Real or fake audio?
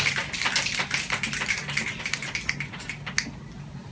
real